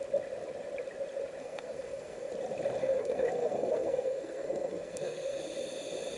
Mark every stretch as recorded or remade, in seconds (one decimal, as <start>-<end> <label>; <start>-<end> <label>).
0.0-1.4 recorded; 1.4-2.3 remade; 2.3-2.8 recorded; 2.8-5.4 remade; 5.4-6.2 recorded